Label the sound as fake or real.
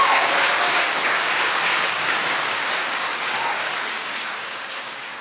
fake